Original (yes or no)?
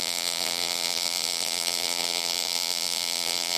no